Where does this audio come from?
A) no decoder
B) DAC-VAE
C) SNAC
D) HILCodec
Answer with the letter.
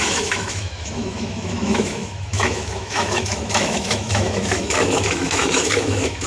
B